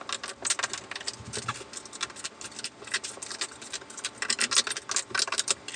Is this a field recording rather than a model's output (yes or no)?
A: yes